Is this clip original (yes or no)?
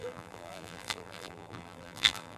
no